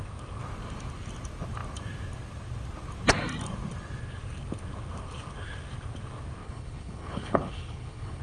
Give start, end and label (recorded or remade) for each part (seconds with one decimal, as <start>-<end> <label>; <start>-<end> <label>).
0.0-6.4 recorded; 6.4-8.2 remade